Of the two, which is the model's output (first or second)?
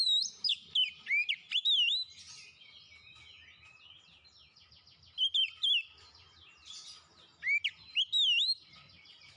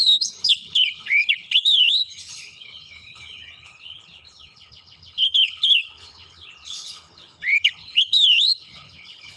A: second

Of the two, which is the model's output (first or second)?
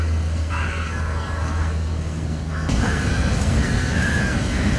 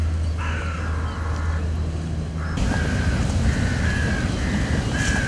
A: first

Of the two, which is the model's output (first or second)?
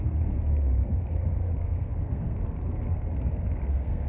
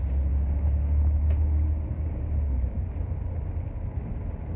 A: first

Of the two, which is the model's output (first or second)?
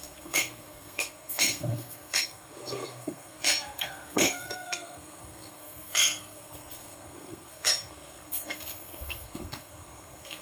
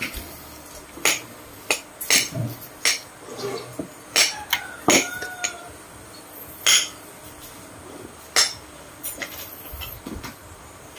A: first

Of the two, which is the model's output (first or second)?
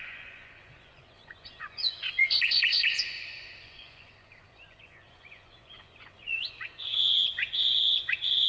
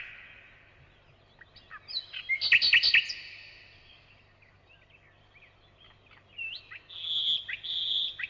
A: first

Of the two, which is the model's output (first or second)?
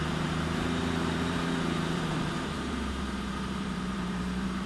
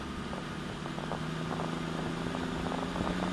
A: first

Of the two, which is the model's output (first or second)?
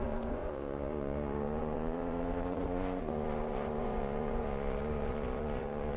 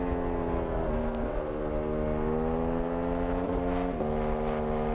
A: first